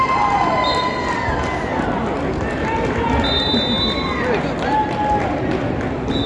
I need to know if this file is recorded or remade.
recorded